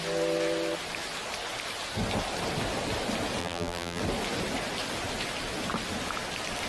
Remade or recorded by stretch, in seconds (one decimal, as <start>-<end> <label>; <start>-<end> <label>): 0.0-3.4 recorded; 3.4-4.0 remade; 4.0-6.7 recorded